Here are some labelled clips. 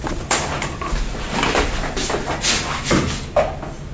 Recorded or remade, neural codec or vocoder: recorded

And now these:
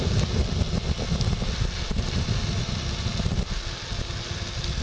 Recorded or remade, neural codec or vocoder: recorded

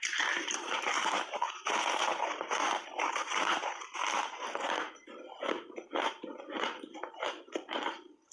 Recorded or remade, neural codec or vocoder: remade, vocoder, BigVGAN v2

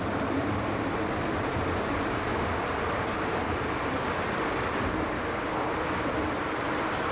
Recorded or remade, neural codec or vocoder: remade, vocoder, BigVGAN v2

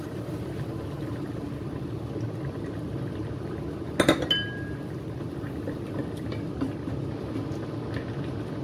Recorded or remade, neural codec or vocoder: recorded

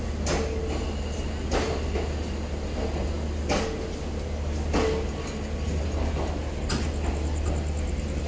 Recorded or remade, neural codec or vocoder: recorded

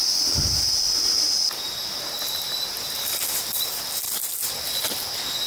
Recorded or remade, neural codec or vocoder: recorded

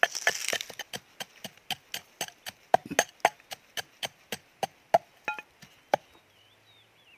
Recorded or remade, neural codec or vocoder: recorded